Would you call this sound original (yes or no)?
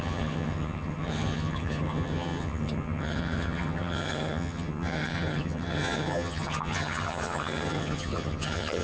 no